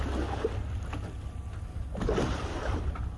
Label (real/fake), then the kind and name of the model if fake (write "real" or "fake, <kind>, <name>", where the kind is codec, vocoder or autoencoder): real